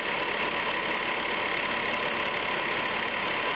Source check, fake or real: real